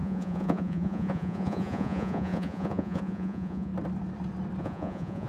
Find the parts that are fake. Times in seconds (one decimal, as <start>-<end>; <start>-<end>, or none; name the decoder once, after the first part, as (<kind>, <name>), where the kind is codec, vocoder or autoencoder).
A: 0.0-3.7 (vocoder, Vocos); 4.6-5.3